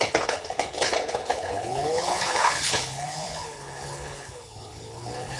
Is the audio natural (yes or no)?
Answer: no